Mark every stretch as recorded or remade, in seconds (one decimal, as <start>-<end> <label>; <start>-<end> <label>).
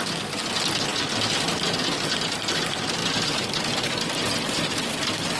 0.0-3.0 recorded; 3.0-4.1 remade; 4.1-5.4 recorded